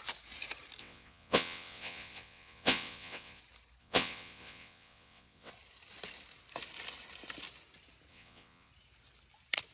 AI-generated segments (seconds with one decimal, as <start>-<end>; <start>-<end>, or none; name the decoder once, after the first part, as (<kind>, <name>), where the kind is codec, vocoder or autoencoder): 0.8-3.4 (vocoder, WaveNeXt); 3.8-5.5; 8.1-8.7